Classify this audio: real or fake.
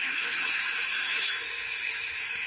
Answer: fake